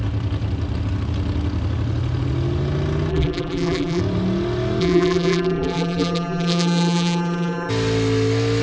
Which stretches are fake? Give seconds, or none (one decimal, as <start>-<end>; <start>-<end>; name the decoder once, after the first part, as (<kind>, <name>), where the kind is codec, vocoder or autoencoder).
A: 3.1-4.0 (vocoder, BigVGAN v2); 4.8-7.7